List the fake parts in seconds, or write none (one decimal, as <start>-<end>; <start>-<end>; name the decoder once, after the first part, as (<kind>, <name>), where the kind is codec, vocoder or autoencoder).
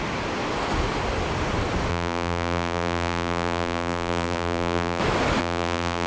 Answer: 1.9-5.0 (vocoder, BigVGAN v2); 5.4-6.1